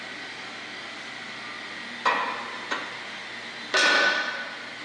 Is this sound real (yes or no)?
yes